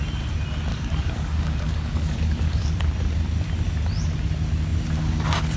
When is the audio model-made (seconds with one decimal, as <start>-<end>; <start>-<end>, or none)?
0.7-2.7